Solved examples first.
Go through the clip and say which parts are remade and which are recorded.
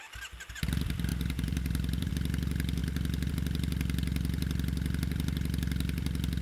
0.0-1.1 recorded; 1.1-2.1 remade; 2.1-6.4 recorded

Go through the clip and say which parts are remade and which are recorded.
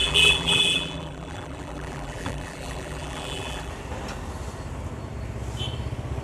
0.0-3.7 remade; 3.7-6.2 recorded